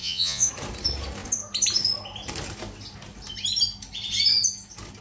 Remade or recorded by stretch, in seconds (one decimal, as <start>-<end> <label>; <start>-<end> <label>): 0.0-0.5 remade; 0.5-5.0 recorded